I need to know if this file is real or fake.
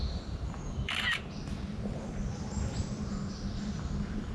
real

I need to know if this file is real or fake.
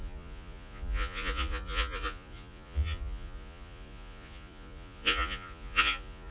fake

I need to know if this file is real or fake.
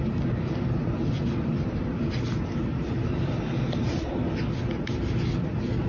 real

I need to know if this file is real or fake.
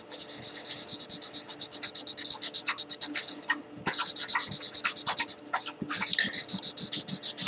real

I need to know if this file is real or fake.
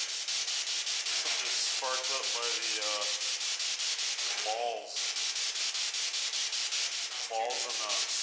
real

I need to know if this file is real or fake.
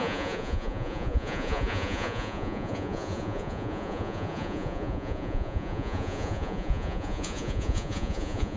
fake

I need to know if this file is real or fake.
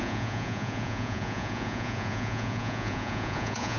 fake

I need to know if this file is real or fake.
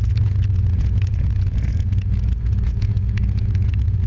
fake